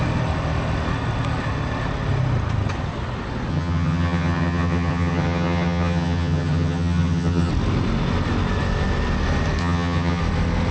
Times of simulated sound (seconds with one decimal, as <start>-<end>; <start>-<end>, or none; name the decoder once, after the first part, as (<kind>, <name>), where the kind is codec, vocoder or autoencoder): 3.5-7.5 (vocoder, HiFi-GAN); 9.6-10.2